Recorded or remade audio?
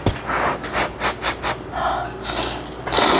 recorded